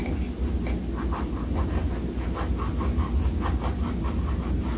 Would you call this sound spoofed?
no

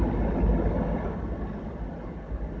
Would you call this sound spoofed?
no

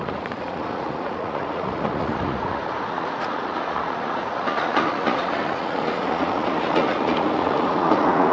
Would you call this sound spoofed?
yes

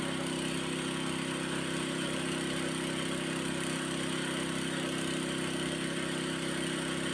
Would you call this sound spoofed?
no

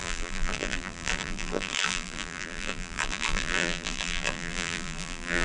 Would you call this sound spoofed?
yes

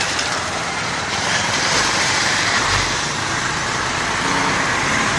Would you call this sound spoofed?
yes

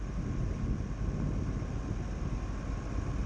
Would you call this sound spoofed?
no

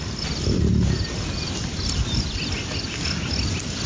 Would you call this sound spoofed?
no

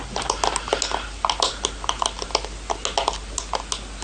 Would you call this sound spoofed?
no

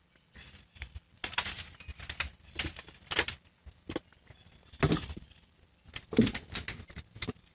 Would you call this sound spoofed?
no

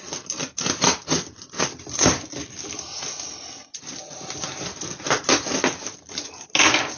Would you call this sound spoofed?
no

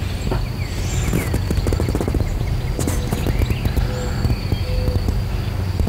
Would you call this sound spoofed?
no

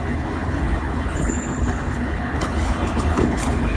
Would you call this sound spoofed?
yes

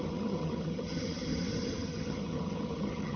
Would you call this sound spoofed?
yes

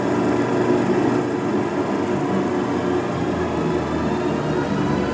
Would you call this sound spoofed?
no